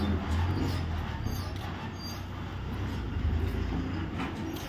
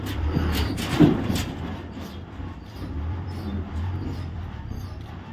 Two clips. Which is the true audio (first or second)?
first